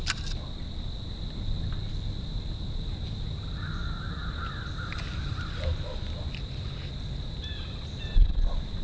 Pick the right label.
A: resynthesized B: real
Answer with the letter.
B